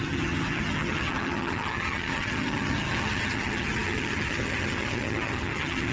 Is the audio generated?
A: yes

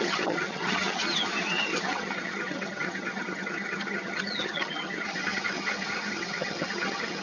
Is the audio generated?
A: yes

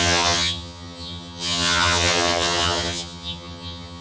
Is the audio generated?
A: yes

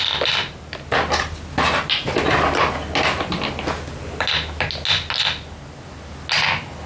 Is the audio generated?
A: no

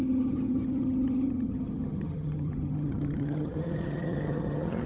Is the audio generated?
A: yes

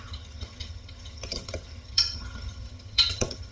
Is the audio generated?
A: yes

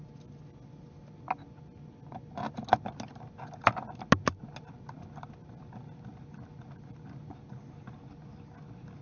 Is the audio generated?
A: no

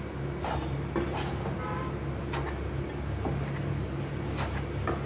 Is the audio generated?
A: no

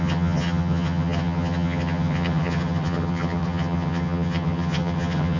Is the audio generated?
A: yes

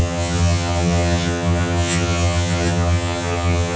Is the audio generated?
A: yes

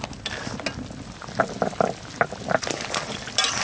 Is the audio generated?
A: no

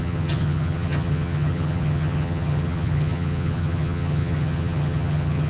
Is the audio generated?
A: yes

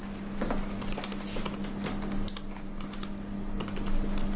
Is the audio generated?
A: no